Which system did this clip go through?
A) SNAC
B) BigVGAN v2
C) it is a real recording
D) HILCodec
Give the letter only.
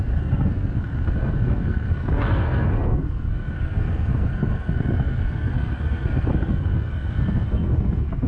A